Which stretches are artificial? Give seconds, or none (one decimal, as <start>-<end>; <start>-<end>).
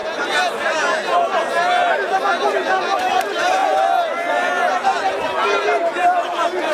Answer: 3.0-3.6; 5.0-6.7